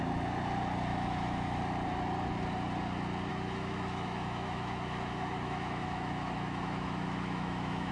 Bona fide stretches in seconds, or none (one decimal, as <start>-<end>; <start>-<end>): 0.0-0.9; 1.6-3.3